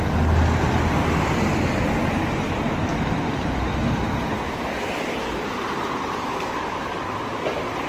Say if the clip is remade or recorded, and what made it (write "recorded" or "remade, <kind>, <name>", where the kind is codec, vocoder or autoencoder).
recorded